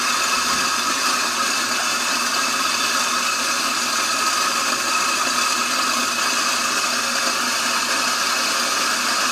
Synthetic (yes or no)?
no